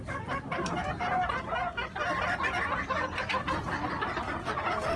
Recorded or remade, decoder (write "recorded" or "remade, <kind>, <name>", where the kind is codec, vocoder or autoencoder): recorded